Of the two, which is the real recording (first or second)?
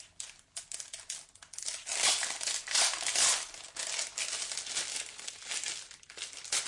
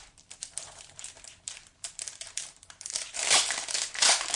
first